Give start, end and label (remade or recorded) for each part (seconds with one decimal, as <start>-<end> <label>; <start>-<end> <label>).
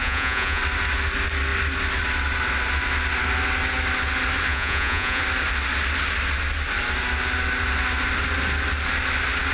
0.0-0.6 remade; 0.6-4.5 recorded; 4.5-5.2 remade; 5.2-9.5 recorded